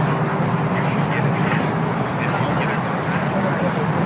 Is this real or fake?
real